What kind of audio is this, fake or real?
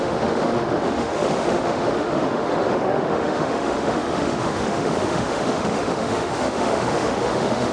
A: fake